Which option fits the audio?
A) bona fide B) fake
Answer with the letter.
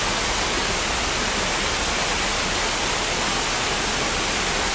A